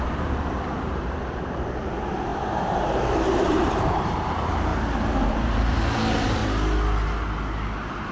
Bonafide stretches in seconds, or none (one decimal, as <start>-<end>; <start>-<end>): 4.7-5.4; 6.4-8.1

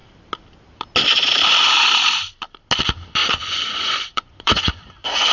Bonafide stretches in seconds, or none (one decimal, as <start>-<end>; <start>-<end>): 0.0-3.2

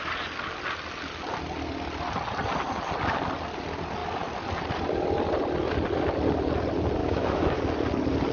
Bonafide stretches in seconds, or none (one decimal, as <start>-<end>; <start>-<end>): 0.0-7.0; 7.6-8.3

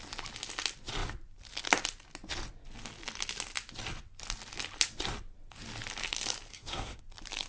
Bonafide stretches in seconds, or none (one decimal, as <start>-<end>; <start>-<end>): 0.0-6.5; 7.0-7.5

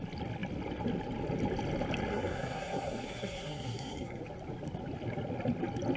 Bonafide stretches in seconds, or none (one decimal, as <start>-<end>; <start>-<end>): 0.0-2.1; 4.2-6.0

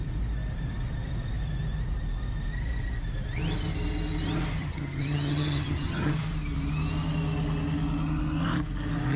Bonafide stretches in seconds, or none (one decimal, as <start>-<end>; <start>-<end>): 0.0-4.6; 6.1-9.2